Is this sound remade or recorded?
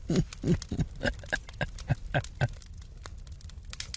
recorded